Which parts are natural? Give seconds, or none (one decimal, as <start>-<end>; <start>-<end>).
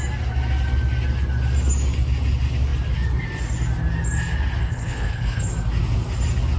0.0-4.6; 5.4-6.6